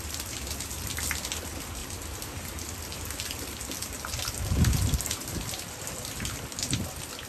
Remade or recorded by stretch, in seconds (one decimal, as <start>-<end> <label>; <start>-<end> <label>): 0.0-7.3 recorded